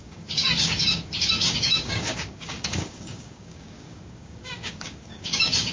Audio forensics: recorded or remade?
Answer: remade